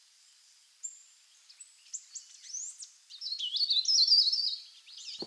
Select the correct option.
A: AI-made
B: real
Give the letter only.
B